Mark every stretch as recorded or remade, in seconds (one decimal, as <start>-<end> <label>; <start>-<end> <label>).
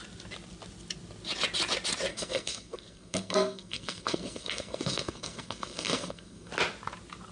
0.0-2.1 recorded; 2.1-6.5 remade; 6.5-7.3 recorded